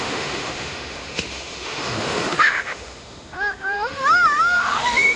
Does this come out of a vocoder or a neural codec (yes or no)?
yes